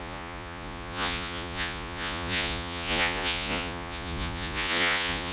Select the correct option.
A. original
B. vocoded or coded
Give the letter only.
B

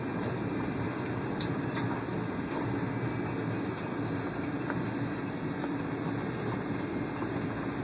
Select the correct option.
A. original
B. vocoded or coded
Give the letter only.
A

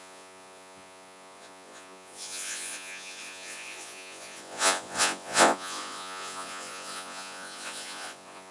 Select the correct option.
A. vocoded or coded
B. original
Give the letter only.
A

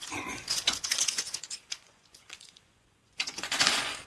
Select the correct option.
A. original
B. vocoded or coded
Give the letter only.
B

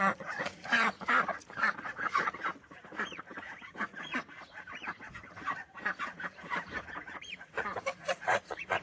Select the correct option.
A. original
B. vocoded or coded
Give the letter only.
B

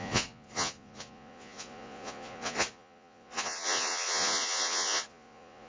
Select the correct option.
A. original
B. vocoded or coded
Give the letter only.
B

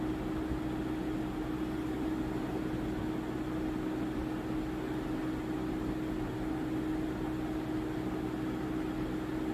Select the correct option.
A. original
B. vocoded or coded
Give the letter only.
A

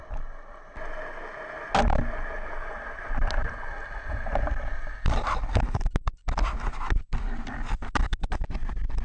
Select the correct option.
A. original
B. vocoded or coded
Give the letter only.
A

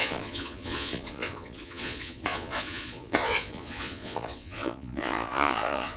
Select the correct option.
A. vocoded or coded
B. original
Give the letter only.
A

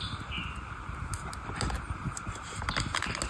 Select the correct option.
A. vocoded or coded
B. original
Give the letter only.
B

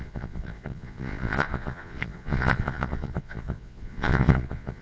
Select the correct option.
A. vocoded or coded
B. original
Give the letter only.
A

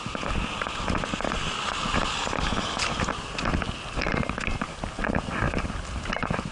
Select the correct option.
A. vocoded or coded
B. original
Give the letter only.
B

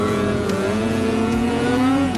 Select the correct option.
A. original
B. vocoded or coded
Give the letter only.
B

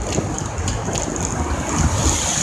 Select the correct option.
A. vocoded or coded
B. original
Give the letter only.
B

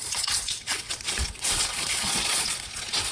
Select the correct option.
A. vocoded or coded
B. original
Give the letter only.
A